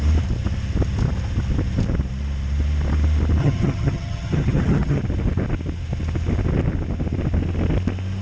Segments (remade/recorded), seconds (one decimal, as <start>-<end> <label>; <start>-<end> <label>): 0.0-3.4 recorded; 3.4-5.0 remade; 5.0-8.2 recorded